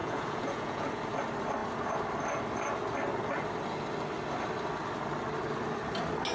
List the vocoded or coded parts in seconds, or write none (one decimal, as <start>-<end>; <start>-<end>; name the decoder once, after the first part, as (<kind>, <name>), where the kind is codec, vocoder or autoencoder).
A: 0.0-1.0 (vocoder, Vocos)